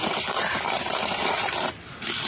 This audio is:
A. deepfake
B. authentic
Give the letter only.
A